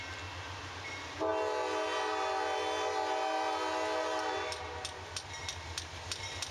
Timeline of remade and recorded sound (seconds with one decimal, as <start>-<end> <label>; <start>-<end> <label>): 0.0-6.5 recorded